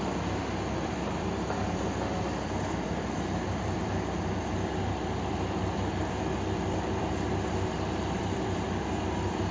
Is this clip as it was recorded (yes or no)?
no